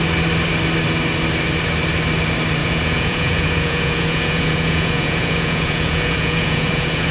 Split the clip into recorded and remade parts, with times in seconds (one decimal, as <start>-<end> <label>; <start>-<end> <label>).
0.0-2.6 recorded; 2.6-7.1 remade